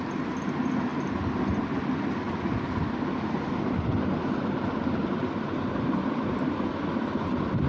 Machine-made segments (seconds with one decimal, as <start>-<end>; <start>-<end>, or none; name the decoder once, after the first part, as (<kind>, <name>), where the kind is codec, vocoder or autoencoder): none